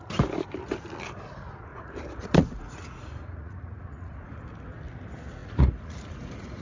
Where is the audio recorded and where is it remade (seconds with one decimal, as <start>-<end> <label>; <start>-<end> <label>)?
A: 0.0-1.7 recorded; 1.7-4.4 remade; 4.4-5.4 recorded; 5.4-6.6 remade